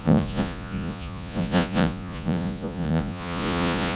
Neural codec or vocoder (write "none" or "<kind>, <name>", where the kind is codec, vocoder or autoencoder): vocoder, Vocos